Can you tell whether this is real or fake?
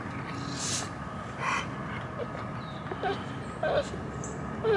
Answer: real